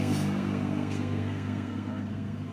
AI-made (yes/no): yes